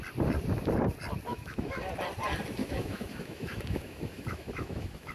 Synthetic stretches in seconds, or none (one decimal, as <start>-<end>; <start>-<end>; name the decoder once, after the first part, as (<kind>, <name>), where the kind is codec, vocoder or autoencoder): 1.3-1.8 (autoencoder, DAC-VAE); 2.6-5.1